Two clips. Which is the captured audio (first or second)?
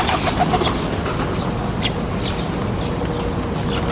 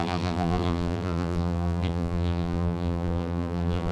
first